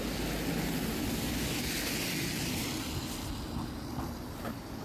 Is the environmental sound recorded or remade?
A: recorded